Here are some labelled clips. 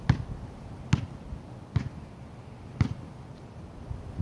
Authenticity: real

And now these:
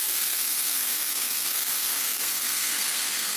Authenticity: fake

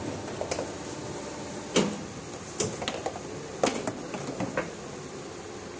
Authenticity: real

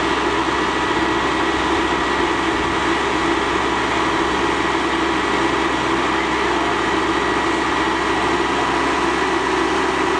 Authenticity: real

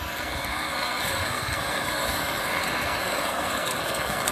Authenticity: fake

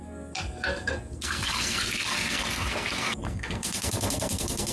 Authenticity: fake